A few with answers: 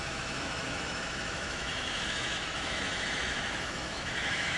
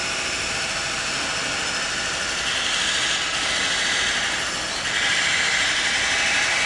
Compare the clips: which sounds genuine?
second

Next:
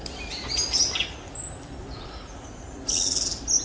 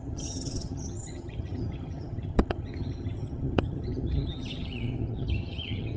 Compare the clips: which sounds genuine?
first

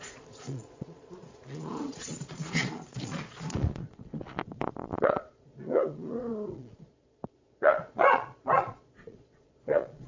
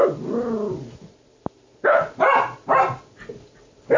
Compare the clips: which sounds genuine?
second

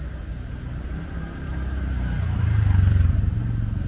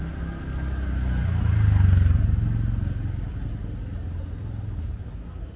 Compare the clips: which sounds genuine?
second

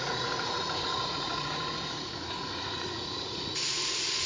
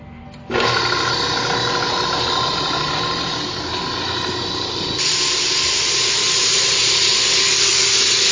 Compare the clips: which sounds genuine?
second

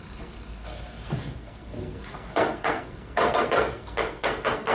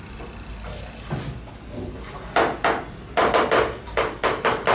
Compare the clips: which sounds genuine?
second